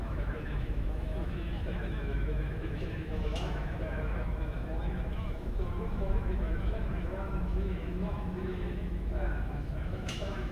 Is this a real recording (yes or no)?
no